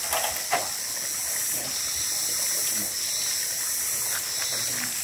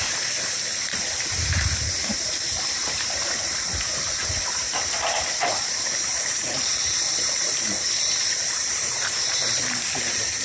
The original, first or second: first